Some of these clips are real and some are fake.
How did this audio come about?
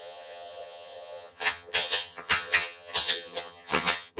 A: fake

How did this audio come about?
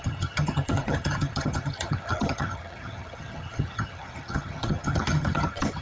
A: fake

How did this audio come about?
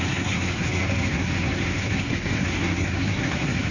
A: fake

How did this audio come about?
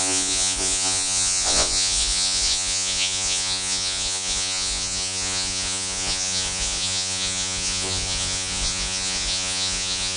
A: fake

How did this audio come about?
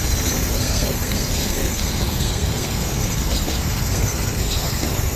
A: fake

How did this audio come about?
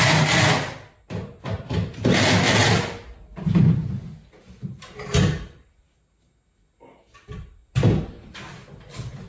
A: real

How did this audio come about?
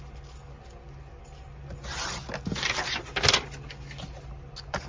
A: real